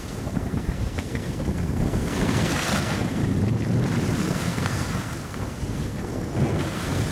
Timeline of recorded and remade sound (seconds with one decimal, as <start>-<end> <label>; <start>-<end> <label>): 0.0-3.2 remade; 3.2-4.2 recorded; 4.2-7.1 remade